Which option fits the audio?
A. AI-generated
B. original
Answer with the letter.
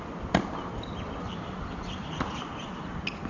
B